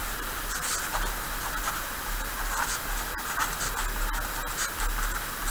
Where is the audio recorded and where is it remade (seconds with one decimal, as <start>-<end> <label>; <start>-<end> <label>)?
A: 0.0-2.7 remade; 2.7-5.5 recorded